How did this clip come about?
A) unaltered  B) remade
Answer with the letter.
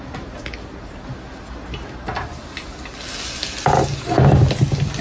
A